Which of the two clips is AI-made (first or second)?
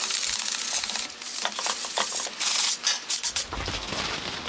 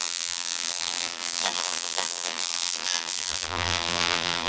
second